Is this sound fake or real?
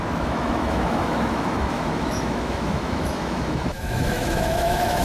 fake